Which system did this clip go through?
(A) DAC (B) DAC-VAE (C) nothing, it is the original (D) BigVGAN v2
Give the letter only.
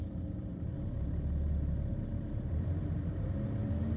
D